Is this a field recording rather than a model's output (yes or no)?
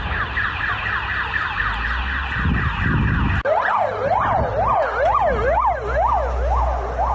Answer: yes